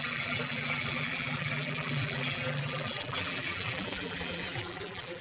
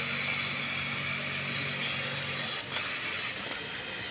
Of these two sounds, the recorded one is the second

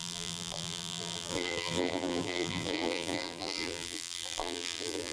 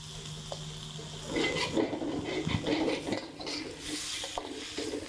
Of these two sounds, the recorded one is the second